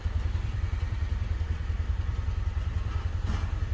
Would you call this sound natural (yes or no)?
no